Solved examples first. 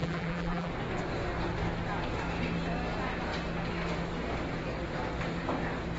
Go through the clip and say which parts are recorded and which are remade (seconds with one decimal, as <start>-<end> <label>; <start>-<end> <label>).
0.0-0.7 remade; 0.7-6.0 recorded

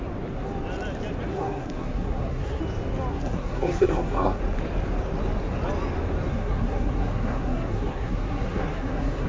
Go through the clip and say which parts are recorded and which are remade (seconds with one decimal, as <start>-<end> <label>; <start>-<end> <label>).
0.0-1.3 recorded; 1.3-2.6 remade; 2.6-3.1 recorded; 3.1-4.4 remade; 4.4-6.3 recorded; 6.3-9.3 remade

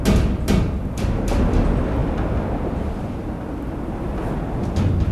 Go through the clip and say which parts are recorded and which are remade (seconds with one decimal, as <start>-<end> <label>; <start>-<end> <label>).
0.0-5.1 recorded

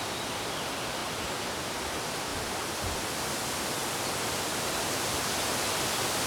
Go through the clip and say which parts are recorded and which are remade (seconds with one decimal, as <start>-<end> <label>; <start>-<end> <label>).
0.0-2.3 recorded; 2.3-3.3 remade; 3.3-3.8 recorded; 3.8-5.3 remade; 5.3-6.3 recorded

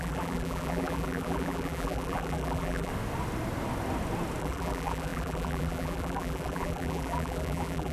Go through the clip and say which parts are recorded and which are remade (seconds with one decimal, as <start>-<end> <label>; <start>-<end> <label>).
0.0-2.9 remade; 2.9-4.4 recorded; 4.4-7.9 remade

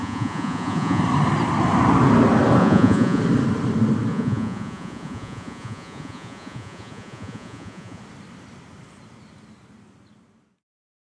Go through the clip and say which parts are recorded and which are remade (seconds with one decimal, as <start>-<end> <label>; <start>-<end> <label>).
0.0-1.0 remade; 1.0-2.6 recorded; 2.6-3.2 remade; 3.2-4.1 recorded; 4.1-8.0 remade; 8.0-11.2 recorded

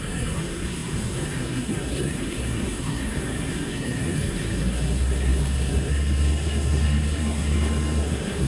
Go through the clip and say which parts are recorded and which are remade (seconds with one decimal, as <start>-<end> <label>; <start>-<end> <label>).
0.0-8.5 remade

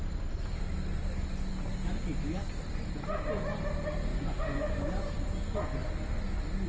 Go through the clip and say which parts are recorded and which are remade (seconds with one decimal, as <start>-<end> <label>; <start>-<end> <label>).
0.0-4.1 recorded; 4.1-4.9 remade; 4.9-6.7 recorded